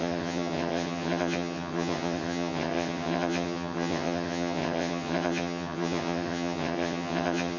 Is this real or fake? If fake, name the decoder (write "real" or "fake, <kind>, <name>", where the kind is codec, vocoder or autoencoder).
fake, vocoder, HiFi-GAN